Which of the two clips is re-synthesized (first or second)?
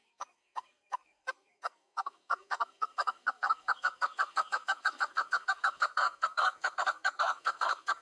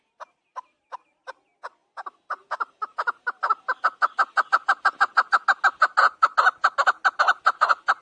first